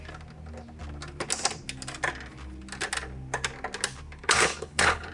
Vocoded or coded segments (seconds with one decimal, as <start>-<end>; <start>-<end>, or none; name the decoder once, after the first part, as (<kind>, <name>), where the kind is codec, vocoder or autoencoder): 4.2-5.1 (codec, HILCodec)